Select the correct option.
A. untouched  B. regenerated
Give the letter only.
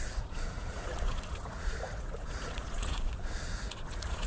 B